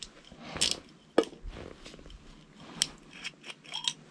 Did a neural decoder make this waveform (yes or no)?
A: no